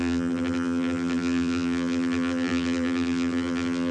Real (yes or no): no